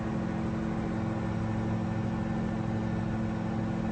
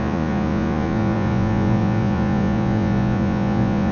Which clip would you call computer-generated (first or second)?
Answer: second